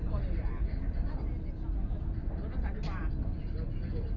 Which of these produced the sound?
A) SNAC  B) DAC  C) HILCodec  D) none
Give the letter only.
D